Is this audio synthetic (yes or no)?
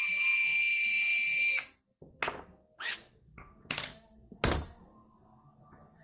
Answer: no